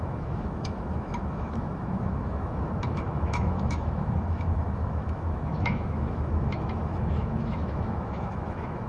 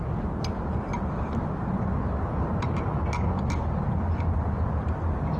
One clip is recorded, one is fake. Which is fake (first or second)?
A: first